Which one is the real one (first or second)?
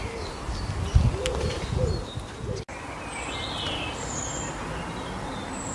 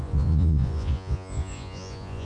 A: first